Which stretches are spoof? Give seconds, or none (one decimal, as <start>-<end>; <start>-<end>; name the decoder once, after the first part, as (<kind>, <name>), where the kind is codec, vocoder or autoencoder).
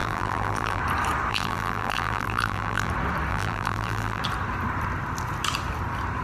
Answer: 0.0-0.8 (vocoder, BigVGAN v2); 1.3-2.9; 3.3-4.2